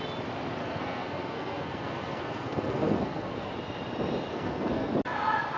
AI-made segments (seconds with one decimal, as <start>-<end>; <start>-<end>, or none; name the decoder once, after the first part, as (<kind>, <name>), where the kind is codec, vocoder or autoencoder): 0.6-3.5 (codec, SNAC); 4.3-4.9